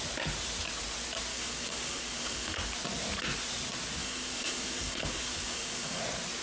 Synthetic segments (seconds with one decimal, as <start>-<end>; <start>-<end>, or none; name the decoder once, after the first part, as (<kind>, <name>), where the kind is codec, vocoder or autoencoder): 1.3-2.6 (codec, DAC); 4.0-6.0